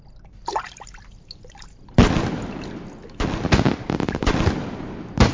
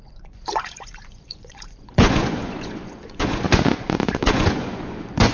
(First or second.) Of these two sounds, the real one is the first